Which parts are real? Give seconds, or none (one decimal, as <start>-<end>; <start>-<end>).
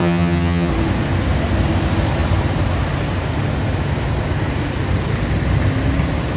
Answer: 0.7-6.4